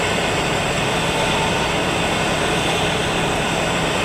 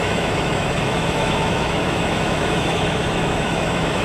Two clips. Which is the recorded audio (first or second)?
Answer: first